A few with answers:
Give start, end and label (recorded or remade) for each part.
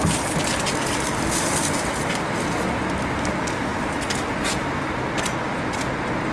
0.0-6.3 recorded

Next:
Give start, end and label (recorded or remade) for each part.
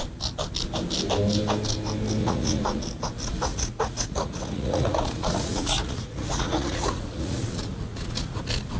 0.0-2.2 recorded; 2.2-2.8 remade; 2.8-3.5 recorded; 3.5-8.4 remade; 8.4-8.8 recorded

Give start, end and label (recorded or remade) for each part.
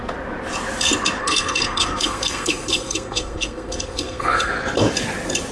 0.0-1.2 recorded; 1.2-4.5 remade; 4.5-5.5 recorded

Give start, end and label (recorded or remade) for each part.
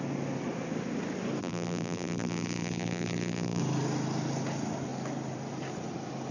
0.0-1.4 recorded; 1.4-3.6 remade; 3.6-6.3 recorded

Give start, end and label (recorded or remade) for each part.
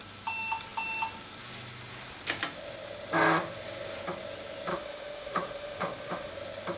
0.0-4.7 recorded; 4.7-6.3 remade; 6.3-6.8 recorded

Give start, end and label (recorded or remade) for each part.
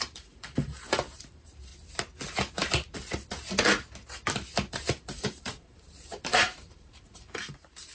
0.0-1.7 remade; 1.7-4.7 recorded; 4.7-7.9 remade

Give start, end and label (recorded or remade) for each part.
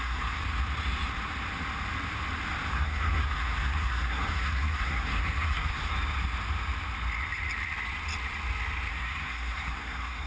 0.0-0.4 remade; 0.4-2.7 recorded; 2.7-5.9 remade; 5.9-8.9 recorded; 8.9-10.3 remade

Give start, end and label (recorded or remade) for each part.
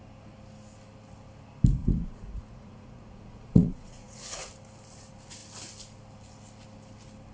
0.0-1.8 recorded; 1.8-4.5 remade; 4.5-7.3 recorded